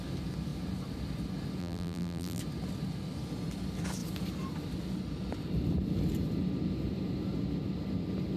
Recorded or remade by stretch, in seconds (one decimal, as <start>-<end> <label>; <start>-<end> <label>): 0.0-1.6 recorded; 1.6-2.4 remade; 2.4-8.4 recorded